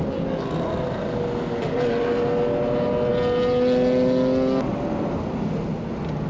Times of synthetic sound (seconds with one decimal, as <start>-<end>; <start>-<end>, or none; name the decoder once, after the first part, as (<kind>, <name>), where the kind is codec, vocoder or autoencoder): none